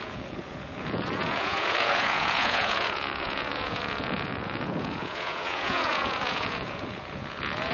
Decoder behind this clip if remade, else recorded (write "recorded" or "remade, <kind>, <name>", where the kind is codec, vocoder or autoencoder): remade, vocoder, Vocos